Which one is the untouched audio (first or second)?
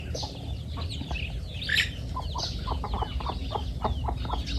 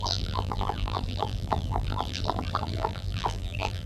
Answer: first